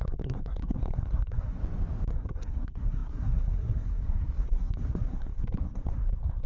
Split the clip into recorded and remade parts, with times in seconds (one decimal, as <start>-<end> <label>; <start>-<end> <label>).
0.0-1.6 remade; 1.6-2.1 recorded; 2.1-6.5 remade